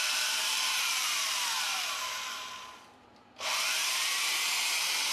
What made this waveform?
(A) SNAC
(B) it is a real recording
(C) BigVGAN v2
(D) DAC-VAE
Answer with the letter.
C